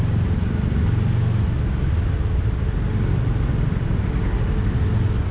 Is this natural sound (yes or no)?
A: yes